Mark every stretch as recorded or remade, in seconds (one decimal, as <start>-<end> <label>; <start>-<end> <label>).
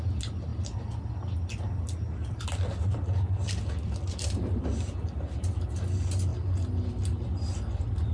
0.0-8.1 recorded